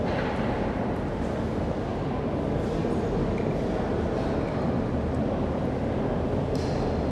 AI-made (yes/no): no